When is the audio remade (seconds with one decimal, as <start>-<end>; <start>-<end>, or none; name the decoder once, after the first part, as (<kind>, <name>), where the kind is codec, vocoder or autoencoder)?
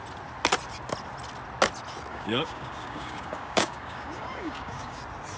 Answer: 2.1-5.0 (codec, DAC)